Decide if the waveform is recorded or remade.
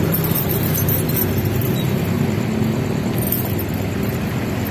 recorded